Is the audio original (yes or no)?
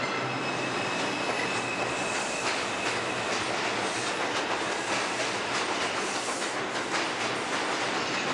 yes